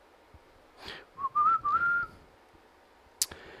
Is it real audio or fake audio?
real